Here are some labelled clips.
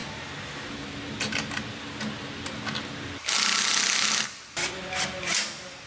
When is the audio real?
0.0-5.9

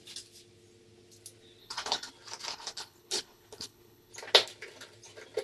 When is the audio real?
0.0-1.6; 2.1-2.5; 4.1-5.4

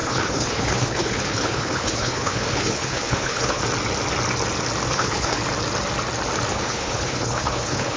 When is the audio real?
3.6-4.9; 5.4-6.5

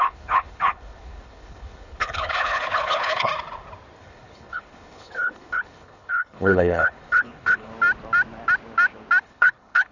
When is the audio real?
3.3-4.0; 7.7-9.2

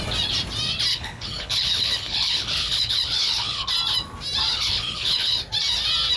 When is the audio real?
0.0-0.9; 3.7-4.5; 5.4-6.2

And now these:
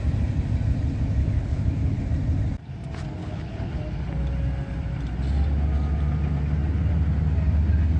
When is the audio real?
0.0-1.2; 2.0-3.2; 3.8-8.0